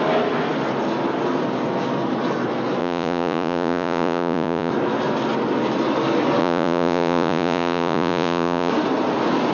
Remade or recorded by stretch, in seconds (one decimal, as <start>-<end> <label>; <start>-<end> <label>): 0.0-2.8 recorded; 2.8-4.7 remade; 4.7-6.4 recorded; 6.4-8.7 remade; 8.7-9.5 recorded